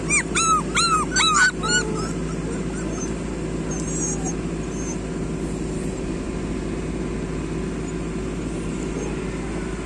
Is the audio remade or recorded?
recorded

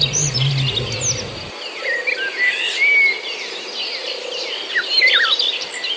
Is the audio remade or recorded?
recorded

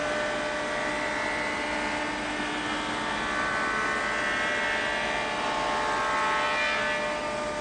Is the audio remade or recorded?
recorded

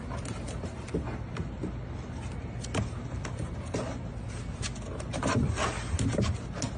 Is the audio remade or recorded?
recorded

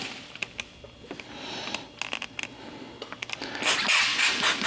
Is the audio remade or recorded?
recorded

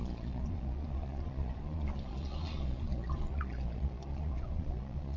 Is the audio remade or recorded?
remade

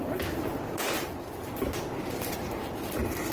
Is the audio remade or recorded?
recorded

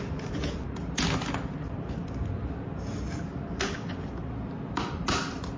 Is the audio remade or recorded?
recorded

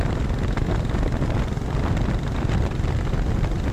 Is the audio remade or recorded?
recorded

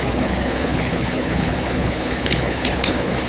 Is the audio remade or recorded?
remade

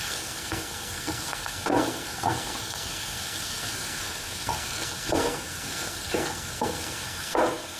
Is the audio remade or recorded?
remade